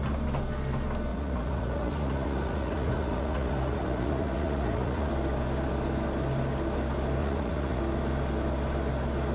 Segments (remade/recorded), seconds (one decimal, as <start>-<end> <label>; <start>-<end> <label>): 0.0-1.1 recorded; 1.1-5.1 remade; 5.1-7.2 recorded; 7.2-7.8 remade; 7.8-9.3 recorded